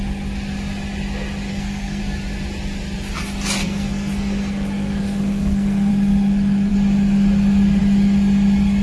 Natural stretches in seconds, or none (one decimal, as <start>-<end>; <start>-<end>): 0.0-1.5; 2.0-3.6; 5.9-8.8